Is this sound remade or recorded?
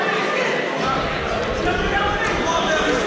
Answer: recorded